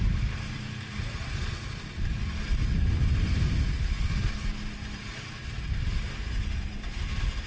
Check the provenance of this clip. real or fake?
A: real